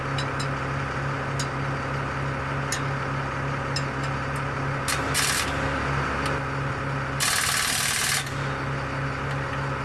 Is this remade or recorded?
recorded